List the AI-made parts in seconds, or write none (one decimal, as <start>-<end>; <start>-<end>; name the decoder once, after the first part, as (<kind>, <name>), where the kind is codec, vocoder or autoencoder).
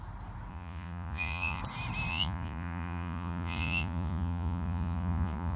0.5-1.6 (vocoder, Vocos); 2.1-5.6